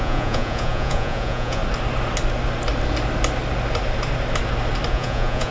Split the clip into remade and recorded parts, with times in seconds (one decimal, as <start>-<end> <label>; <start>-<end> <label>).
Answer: 0.0-1.6 remade; 1.6-4.9 recorded; 4.9-5.5 remade